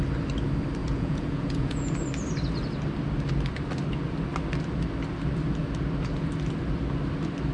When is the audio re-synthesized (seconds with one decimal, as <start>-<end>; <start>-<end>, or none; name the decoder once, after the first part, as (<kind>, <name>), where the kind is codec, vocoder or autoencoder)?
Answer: 0.8-1.9 (vocoder, Vocos)